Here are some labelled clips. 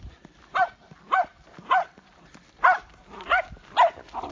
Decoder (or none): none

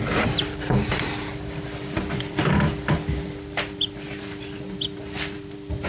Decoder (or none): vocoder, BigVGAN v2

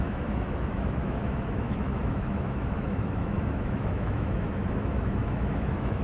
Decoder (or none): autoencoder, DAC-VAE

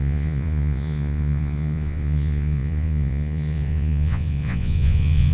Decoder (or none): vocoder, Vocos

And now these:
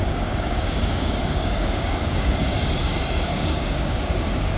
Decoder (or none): codec, DAC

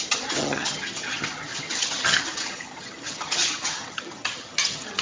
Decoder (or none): vocoder, HiFi-GAN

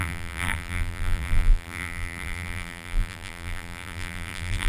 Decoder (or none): vocoder, BigVGAN v2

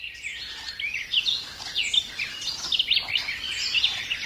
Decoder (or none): none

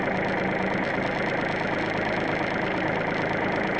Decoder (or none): none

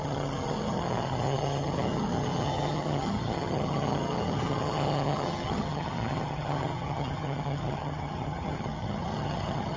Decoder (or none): vocoder, HiFi-GAN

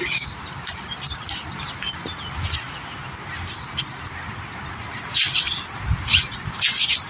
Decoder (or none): none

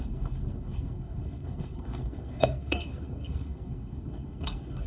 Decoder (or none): codec, SNAC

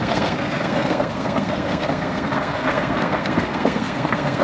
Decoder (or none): codec, SNAC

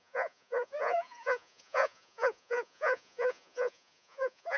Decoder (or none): vocoder, Vocos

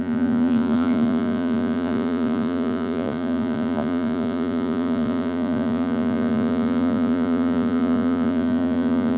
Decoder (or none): vocoder, Vocos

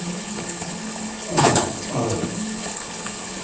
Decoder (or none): codec, HILCodec